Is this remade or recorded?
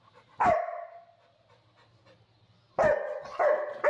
recorded